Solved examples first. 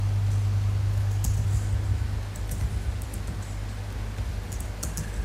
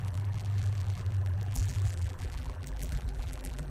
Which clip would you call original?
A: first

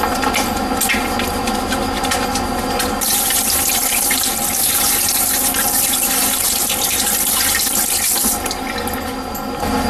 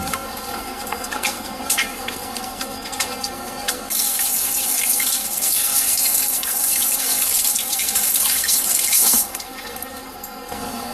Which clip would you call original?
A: first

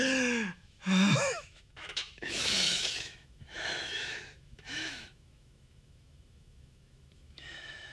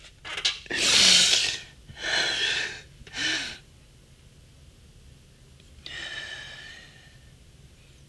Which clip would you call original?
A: second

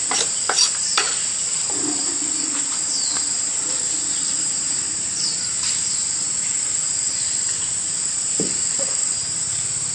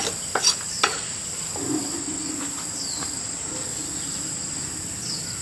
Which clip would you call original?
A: second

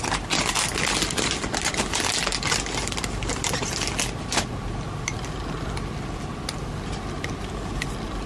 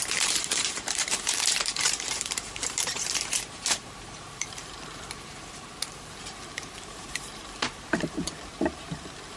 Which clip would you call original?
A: first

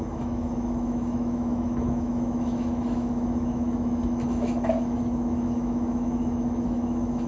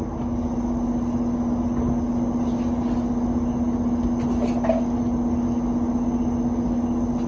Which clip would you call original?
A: second